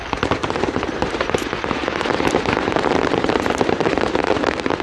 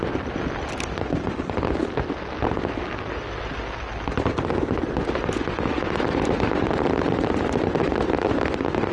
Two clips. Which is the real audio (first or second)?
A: second